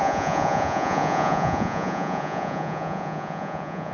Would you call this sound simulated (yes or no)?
yes